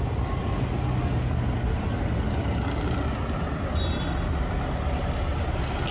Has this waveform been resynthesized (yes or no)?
no